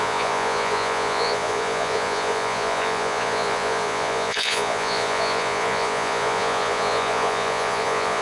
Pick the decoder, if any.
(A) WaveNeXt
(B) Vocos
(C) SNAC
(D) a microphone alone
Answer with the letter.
B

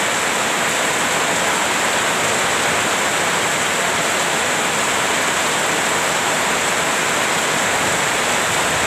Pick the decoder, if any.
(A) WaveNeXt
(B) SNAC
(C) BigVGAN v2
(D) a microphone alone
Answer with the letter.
D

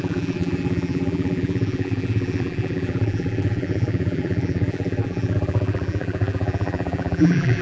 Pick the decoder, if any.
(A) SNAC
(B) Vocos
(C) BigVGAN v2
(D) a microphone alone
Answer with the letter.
C